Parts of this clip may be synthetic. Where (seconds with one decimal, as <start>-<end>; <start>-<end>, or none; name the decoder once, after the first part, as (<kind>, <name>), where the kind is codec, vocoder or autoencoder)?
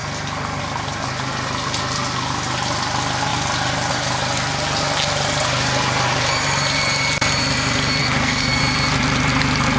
8.0-8.6 (codec, SNAC)